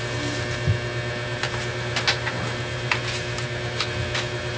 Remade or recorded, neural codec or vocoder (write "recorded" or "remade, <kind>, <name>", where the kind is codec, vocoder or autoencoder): recorded